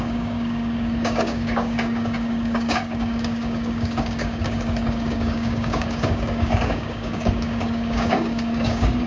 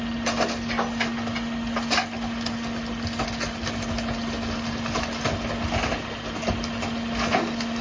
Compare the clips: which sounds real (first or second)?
second